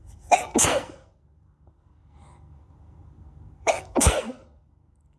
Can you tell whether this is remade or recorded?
remade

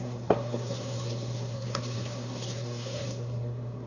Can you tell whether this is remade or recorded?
remade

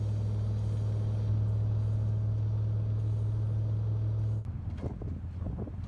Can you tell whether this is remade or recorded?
recorded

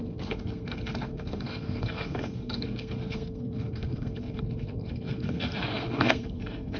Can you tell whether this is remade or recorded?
remade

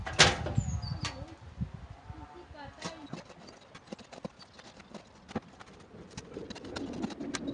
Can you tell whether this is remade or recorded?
recorded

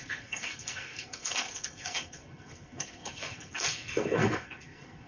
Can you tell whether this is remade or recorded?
remade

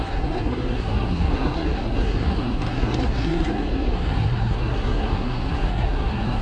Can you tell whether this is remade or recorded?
remade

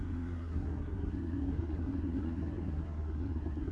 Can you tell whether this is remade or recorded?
remade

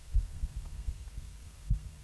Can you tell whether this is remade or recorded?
remade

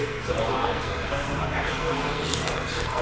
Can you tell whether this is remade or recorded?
remade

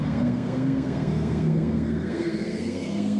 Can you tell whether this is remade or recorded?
remade